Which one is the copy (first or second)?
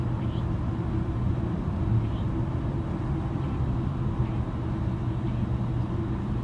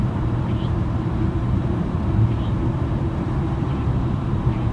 second